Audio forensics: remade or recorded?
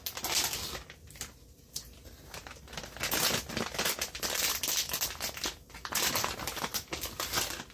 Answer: recorded